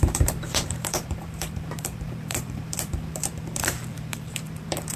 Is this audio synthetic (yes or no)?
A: yes